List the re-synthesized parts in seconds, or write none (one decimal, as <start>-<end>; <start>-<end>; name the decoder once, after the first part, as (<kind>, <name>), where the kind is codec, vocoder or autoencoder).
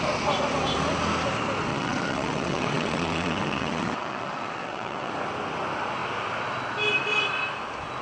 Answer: 1.7-5.1 (vocoder, WaveNeXt)